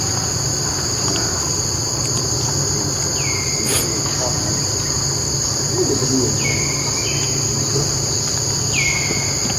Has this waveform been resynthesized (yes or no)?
no